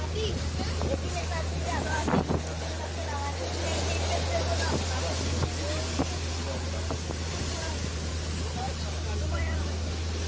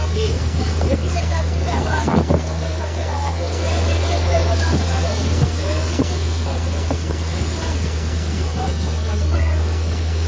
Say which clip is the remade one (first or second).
second